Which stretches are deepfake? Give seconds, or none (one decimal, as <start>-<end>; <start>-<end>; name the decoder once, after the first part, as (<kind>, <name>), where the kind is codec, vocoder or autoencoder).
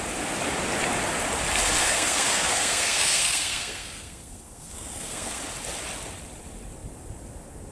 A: 1.8-5.4 (codec, SNAC)